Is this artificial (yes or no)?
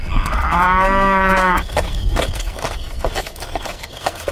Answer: yes